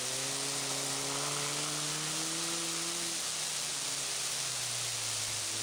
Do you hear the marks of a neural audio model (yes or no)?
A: no